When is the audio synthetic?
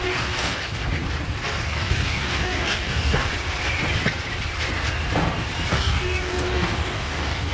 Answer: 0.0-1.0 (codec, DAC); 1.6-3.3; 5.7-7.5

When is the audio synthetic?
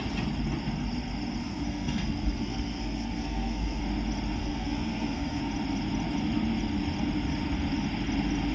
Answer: 1.4-3.8 (codec, SNAC); 4.4-5.4